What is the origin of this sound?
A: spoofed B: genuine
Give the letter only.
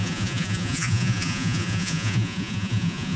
A